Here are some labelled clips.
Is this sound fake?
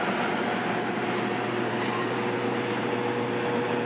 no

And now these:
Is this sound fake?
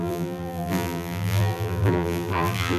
yes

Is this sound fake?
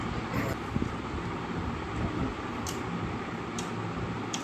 no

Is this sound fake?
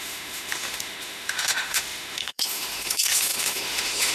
yes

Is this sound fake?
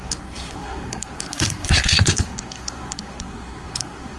yes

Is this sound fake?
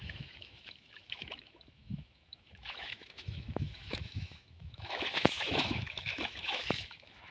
yes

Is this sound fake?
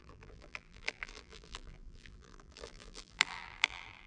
yes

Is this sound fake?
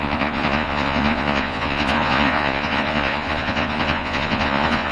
yes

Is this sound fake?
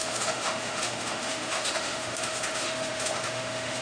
yes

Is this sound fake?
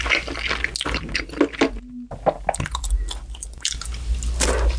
no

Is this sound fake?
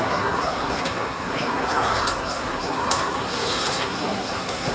yes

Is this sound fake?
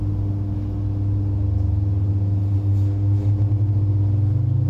no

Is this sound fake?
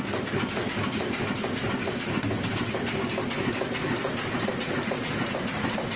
no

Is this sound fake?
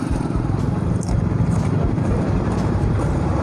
yes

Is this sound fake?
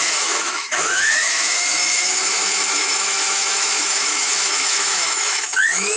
yes